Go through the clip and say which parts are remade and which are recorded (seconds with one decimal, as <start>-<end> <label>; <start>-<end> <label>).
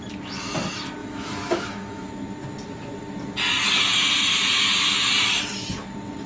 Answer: 0.0-1.0 recorded; 1.0-2.1 remade; 2.1-6.3 recorded